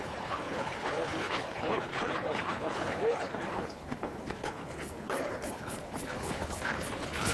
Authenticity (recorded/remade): remade